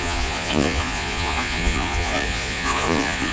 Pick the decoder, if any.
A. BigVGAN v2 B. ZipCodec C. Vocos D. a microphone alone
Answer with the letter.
C